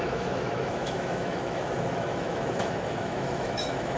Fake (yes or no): yes